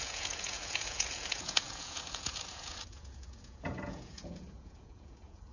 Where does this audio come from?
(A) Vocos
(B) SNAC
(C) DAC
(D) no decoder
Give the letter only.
A